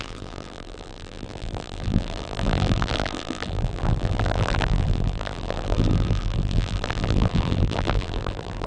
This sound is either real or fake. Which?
fake